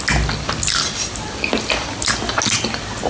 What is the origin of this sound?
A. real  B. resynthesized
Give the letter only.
A